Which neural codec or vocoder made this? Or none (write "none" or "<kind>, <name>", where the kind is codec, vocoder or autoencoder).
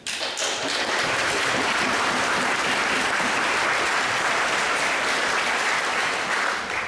vocoder, BigVGAN v2